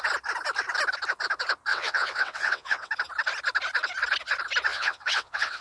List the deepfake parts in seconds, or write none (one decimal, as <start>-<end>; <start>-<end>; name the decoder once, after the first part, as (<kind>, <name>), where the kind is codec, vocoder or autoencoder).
1.7-2.9 (vocoder, WaveNeXt); 4.7-5.6